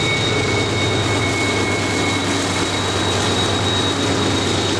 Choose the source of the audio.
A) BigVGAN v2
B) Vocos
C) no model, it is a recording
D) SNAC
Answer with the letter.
C